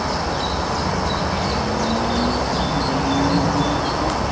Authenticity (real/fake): real